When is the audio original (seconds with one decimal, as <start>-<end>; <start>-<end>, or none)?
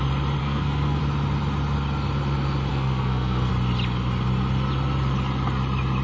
0.0-0.4; 1.0-2.7; 3.5-6.0